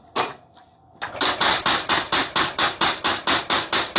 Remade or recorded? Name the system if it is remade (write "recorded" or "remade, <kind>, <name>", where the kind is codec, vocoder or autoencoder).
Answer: recorded